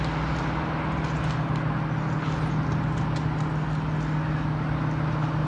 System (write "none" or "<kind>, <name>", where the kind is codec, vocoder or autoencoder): none